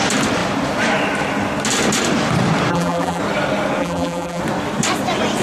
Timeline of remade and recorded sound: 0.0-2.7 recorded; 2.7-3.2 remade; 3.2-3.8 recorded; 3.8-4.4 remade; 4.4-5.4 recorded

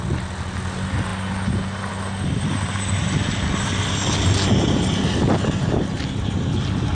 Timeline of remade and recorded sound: 0.0-6.9 recorded

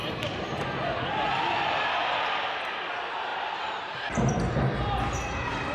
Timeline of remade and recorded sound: 0.0-1.8 remade; 1.8-3.3 recorded; 3.3-4.6 remade; 4.6-5.7 recorded

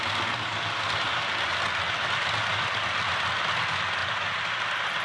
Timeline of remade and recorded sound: 0.0-5.0 recorded

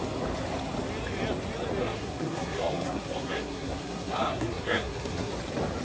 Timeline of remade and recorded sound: 0.0-1.8 recorded; 1.8-5.3 remade; 5.3-5.8 recorded